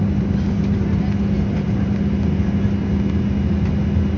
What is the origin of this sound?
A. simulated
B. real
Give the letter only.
B